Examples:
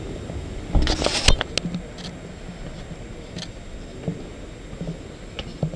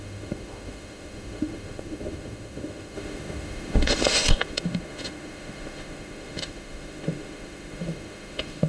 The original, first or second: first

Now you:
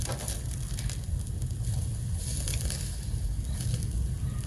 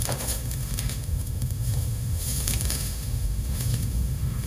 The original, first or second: first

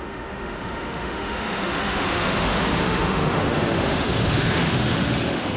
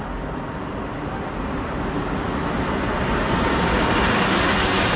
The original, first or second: second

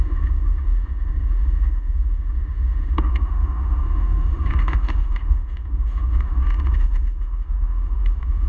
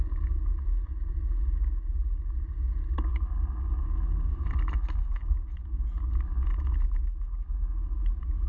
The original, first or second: second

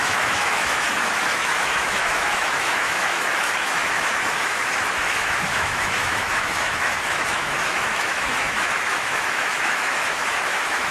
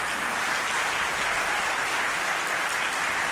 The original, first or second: second